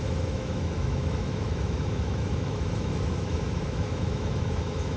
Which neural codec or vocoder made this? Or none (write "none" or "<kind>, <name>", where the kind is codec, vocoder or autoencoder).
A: autoencoder, DAC-VAE